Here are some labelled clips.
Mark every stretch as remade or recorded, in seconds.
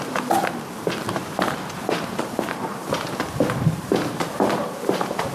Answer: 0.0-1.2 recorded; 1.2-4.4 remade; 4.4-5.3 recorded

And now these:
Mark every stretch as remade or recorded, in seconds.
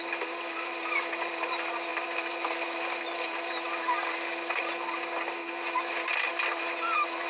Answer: 0.0-7.3 recorded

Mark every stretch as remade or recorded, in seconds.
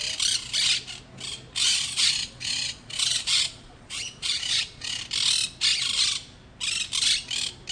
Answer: 0.0-1.6 recorded; 1.6-5.0 remade; 5.0-7.7 recorded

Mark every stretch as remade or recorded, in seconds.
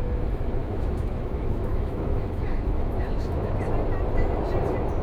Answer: 0.0-0.6 recorded; 0.6-3.6 remade; 3.6-5.0 recorded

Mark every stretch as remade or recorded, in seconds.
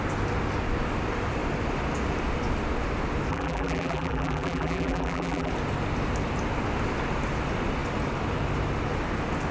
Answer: 0.0-3.3 recorded; 3.3-5.5 remade; 5.5-9.5 recorded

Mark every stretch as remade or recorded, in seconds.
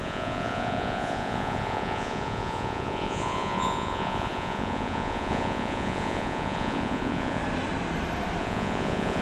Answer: 0.0-7.4 remade; 7.4-8.4 recorded; 8.4-9.2 remade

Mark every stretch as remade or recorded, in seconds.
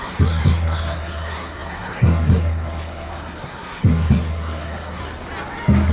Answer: 0.0-5.0 remade; 5.0-5.9 recorded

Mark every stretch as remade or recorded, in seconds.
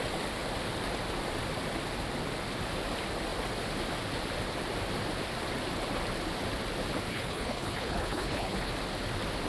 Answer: 0.0-7.1 recorded; 7.1-8.7 remade; 8.7-9.5 recorded